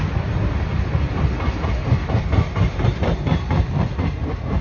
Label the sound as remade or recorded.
recorded